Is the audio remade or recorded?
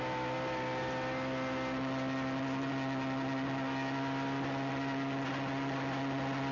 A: recorded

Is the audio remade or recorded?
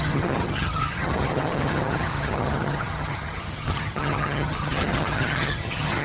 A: remade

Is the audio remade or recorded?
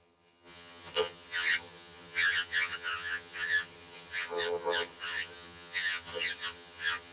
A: remade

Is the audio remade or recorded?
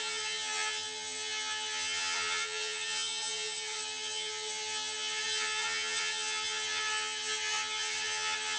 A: remade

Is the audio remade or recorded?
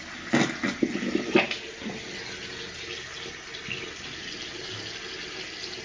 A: recorded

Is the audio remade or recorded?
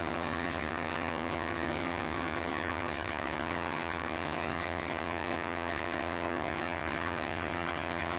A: remade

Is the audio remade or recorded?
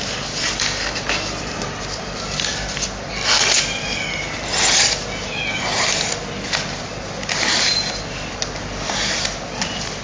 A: recorded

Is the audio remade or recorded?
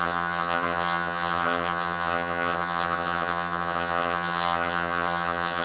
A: remade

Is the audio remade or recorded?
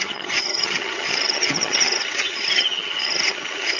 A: remade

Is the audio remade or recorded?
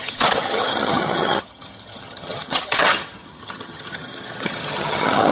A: remade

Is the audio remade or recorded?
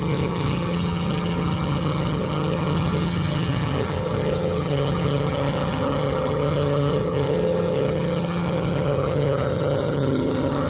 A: remade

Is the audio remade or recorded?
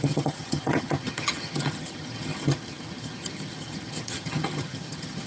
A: remade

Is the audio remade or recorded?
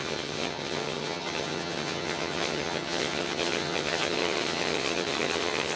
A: remade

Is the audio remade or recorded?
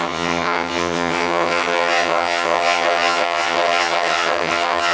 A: remade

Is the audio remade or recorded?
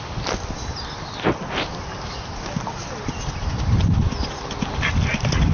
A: recorded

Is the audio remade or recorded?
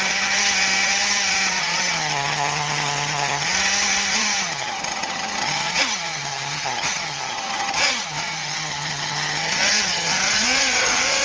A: remade